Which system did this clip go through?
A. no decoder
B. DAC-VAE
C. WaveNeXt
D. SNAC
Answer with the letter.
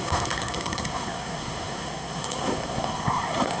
D